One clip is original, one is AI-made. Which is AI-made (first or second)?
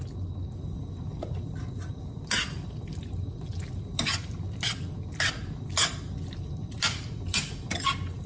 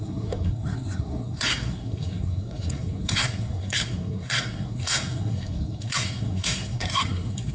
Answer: second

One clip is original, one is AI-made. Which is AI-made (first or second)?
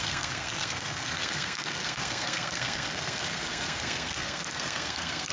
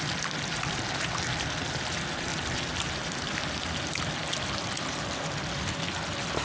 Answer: first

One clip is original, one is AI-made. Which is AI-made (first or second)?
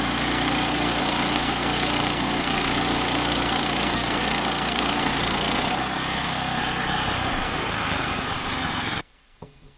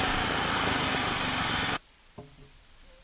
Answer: first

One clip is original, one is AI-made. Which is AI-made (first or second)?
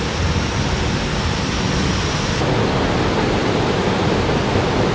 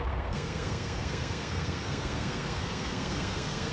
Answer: second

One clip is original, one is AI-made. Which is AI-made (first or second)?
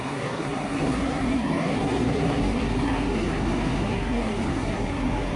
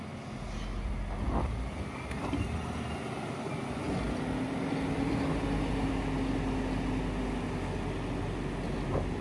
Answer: first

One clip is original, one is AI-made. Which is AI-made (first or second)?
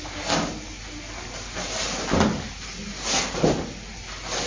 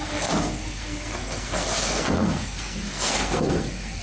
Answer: second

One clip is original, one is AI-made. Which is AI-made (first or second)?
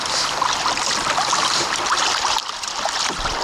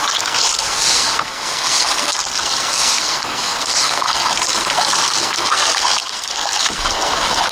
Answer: second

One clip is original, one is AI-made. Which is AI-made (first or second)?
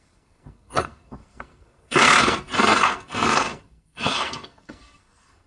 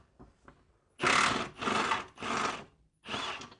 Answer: first